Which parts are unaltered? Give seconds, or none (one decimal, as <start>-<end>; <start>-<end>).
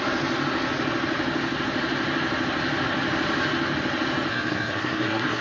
0.0-4.3